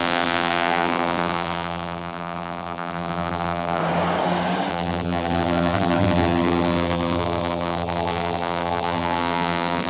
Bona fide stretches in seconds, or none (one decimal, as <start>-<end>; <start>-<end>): 3.8-4.7